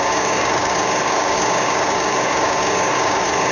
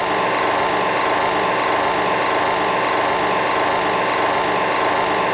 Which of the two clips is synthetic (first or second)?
first